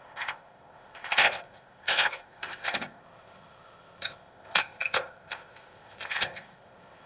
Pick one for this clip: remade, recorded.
remade